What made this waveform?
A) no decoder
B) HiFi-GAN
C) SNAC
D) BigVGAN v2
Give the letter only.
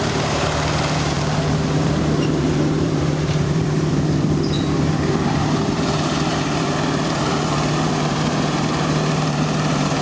D